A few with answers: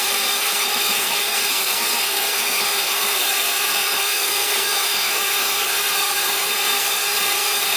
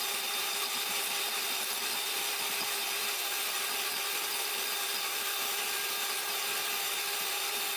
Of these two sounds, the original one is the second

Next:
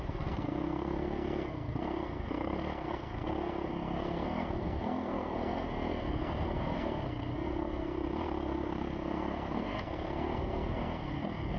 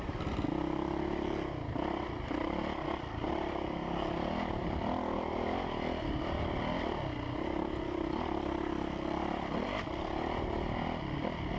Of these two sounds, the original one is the second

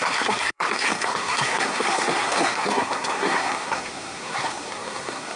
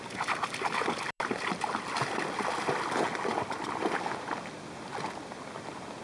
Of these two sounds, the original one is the second